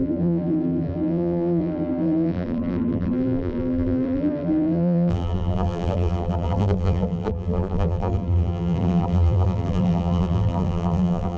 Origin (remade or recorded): remade